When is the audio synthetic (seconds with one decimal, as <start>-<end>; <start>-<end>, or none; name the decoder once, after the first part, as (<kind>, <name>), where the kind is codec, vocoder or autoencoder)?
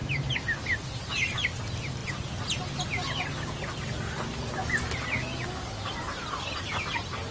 none